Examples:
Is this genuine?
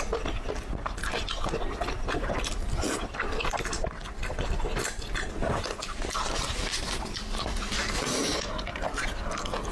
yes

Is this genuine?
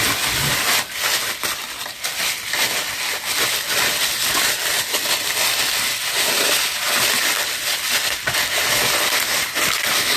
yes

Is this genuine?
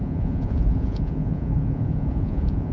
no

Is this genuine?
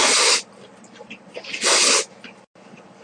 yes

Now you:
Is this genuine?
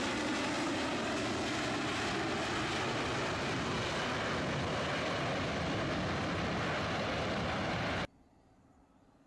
yes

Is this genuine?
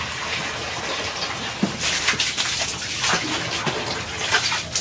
yes